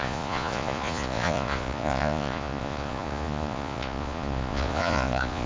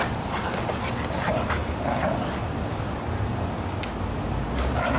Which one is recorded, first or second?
second